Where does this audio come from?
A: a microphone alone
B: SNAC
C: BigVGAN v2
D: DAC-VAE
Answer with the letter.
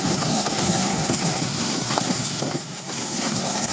B